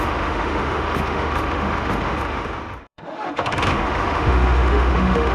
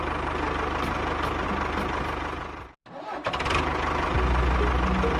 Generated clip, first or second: first